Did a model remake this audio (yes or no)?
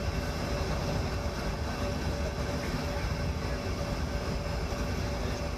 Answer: no